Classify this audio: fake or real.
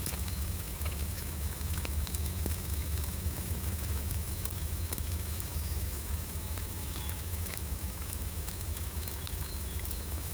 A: fake